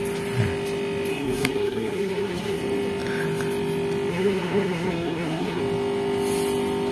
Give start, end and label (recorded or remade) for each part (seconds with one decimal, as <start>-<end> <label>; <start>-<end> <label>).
0.0-1.1 recorded; 1.1-2.6 remade; 2.6-4.1 recorded; 4.1-5.6 remade; 5.6-6.9 recorded